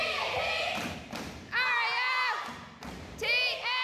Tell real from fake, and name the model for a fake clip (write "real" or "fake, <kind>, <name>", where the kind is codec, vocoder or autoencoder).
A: real